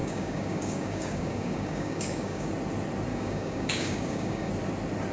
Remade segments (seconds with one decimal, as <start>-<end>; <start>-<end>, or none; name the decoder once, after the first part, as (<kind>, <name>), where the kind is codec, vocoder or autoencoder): 0.0-2.5 (codec, DAC); 3.1-4.5

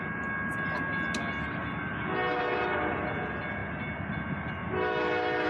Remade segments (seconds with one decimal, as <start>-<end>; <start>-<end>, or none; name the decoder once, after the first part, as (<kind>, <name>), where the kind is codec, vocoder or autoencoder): none

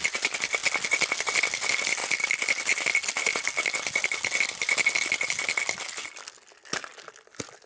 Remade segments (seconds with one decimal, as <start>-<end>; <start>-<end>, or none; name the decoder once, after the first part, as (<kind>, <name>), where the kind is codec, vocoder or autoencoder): none

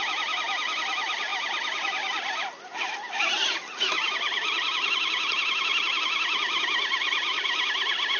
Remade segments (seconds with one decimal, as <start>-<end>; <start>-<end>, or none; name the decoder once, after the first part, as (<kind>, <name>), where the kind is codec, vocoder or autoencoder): none

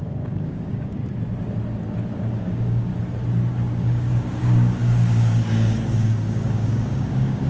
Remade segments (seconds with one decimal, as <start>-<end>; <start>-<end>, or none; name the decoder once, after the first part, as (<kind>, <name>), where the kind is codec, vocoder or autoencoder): 0.0-1.0 (codec, DAC); 2.1-2.9; 3.8-7.5

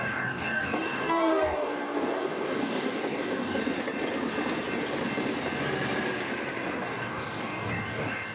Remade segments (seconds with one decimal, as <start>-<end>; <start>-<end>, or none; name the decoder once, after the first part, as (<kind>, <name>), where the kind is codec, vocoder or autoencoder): 0.0-3.6 (codec, DAC); 6.8-8.3

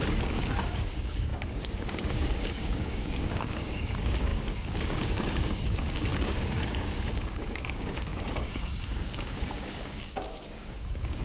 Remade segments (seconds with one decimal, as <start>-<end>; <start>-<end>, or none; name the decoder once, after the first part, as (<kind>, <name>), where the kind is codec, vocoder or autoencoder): 0.0-11.2 (codec, DAC)

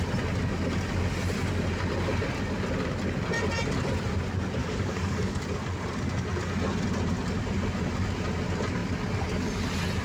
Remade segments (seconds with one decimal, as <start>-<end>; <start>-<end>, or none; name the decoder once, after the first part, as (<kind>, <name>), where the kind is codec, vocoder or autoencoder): 4.6-5.4 (codec, DAC)